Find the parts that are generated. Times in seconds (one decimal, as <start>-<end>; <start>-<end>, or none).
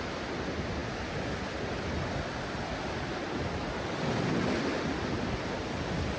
none